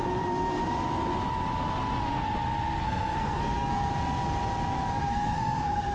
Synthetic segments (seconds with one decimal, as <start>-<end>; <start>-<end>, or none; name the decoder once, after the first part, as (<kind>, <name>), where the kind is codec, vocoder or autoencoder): 2.8-3.9 (codec, SNAC); 5.0-5.9